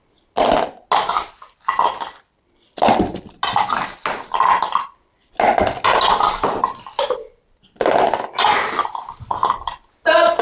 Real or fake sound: real